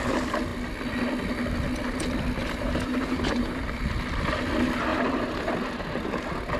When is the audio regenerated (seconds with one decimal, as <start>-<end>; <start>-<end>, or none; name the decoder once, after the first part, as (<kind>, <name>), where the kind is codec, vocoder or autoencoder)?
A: 2.4-3.6 (vocoder, BigVGAN v2); 4.9-5.5